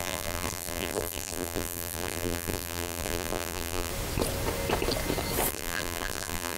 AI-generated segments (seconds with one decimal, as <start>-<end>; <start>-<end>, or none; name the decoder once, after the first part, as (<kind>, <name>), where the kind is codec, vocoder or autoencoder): 0.0-3.9 (vocoder, BigVGAN v2); 5.5-6.6